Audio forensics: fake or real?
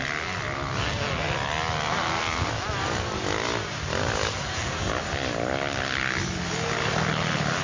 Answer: real